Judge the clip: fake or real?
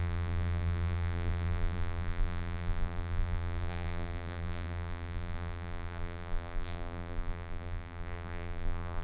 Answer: fake